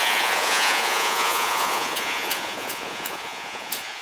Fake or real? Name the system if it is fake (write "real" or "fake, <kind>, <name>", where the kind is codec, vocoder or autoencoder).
fake, vocoder, Vocos